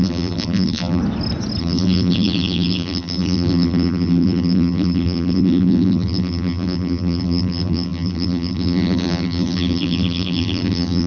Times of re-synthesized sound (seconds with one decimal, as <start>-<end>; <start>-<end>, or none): 0.0-1.0; 1.6-11.1